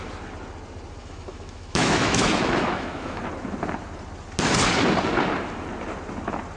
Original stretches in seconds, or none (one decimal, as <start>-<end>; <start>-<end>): 0.0-1.0; 3.2-6.6